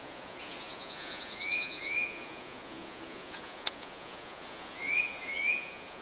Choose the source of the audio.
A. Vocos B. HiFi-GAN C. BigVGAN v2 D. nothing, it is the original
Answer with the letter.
A